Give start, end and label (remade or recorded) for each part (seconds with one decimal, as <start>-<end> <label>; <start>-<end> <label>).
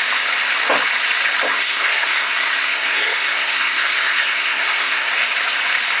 0.0-1.5 recorded; 1.5-5.1 remade; 5.1-6.0 recorded